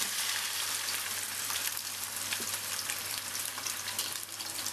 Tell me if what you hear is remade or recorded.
remade